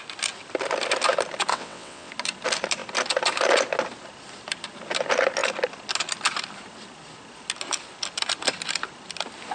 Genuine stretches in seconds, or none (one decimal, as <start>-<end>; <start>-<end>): 0.0-1.5; 2.1-9.5